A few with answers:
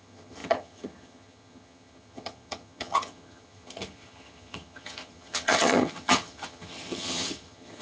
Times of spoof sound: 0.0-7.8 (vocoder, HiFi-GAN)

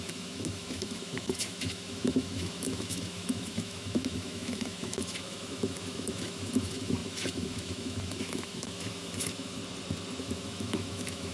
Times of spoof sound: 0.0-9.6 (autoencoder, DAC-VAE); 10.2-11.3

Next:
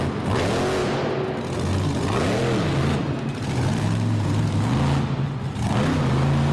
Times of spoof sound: none

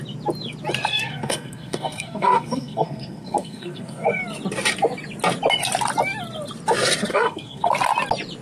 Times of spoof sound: 0.8-4.2 (codec, SNAC); 7.1-7.7